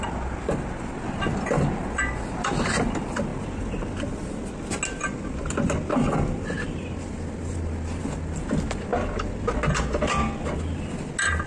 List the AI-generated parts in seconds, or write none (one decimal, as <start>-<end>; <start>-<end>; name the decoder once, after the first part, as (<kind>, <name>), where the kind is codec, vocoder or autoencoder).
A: none

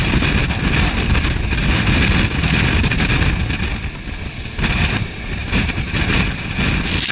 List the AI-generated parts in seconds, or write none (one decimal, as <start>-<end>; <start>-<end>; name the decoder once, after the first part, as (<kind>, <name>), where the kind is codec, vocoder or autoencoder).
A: 5.4-6.0 (vocoder, BigVGAN v2)

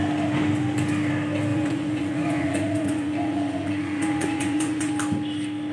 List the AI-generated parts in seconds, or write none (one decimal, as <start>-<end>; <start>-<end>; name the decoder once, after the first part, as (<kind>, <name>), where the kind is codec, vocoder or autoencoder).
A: 1.5-4.9 (vocoder, Vocos)

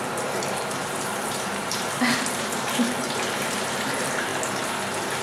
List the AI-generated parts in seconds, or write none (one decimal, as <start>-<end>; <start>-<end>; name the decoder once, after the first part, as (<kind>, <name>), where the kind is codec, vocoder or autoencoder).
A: 0.0-4.3 (vocoder, BigVGAN v2)

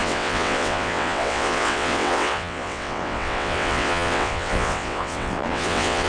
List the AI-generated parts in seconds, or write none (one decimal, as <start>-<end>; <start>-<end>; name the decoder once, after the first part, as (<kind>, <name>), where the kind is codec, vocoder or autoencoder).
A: 0.0-6.1 (vocoder, WaveNeXt)

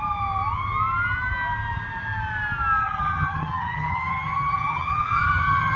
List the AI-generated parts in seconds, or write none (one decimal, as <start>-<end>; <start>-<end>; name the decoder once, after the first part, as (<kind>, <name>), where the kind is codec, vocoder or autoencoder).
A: 2.8-5.8 (vocoder, HiFi-GAN)